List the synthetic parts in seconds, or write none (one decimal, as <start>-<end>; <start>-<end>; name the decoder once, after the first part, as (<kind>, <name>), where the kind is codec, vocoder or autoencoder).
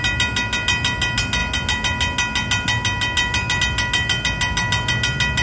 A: none